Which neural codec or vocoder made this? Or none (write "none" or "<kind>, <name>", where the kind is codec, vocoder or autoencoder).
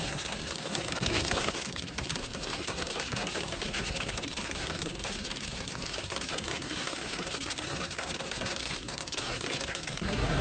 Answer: codec, SNAC